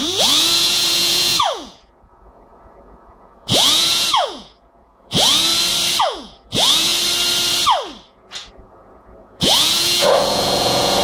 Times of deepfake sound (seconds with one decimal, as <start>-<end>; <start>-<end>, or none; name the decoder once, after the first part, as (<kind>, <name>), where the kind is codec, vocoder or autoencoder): 0.0-5.5 (vocoder, Vocos); 6.0-6.9; 8.1-11.0